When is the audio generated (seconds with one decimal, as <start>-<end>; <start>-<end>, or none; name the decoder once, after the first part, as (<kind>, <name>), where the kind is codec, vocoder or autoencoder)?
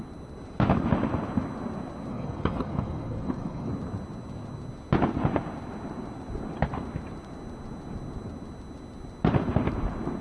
2.1-3.7 (codec, DAC)